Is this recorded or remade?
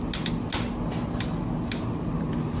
recorded